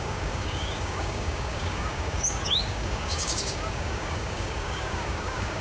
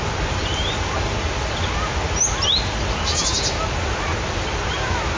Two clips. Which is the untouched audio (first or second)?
second